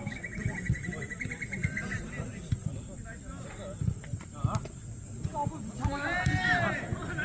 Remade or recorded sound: recorded